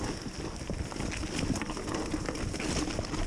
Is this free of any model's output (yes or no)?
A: yes